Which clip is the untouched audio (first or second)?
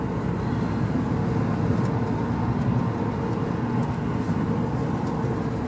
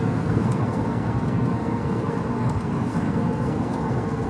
first